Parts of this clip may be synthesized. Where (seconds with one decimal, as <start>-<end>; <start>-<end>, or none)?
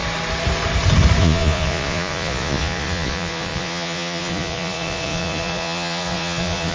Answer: 1.2-6.7